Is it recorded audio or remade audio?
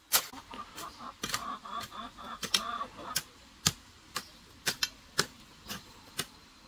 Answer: recorded